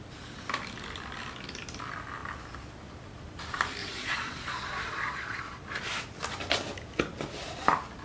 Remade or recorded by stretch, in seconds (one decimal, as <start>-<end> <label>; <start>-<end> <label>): 0.0-3.8 recorded; 3.8-5.6 remade; 5.6-8.0 recorded